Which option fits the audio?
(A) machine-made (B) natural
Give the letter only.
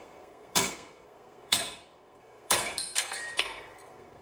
A